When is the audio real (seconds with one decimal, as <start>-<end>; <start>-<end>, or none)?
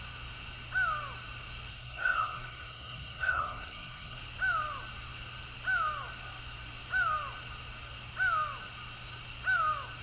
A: 0.0-1.7; 4.2-10.0